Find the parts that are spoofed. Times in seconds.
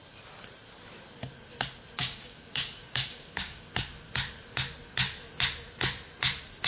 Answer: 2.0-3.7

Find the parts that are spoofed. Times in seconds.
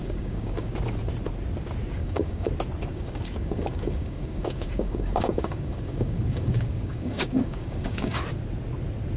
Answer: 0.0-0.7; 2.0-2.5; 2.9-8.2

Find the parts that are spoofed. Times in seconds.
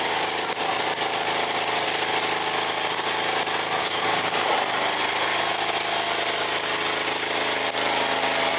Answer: 3.8-4.5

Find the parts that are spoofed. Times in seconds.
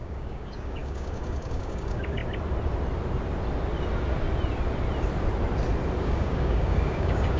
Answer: 0.0-2.2; 6.0-7.4